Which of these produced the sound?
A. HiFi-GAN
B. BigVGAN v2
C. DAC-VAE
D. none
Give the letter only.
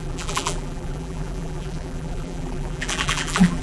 B